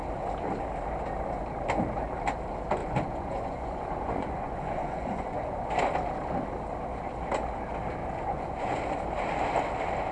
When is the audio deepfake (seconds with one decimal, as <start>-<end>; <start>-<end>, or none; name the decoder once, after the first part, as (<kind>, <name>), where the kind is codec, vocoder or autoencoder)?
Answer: 2.8-5.7 (vocoder, Vocos); 8.0-8.8